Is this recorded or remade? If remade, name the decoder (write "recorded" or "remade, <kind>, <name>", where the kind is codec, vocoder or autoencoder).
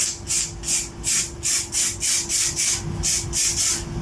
recorded